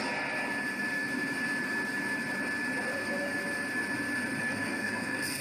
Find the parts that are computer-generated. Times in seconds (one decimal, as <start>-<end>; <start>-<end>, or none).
4.4-5.4